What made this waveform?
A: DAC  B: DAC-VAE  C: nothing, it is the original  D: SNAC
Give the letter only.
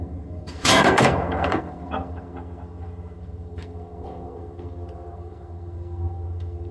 D